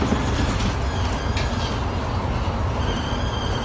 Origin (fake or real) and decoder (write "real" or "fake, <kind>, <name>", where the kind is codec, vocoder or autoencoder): real